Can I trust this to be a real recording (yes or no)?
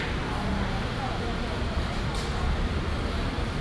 yes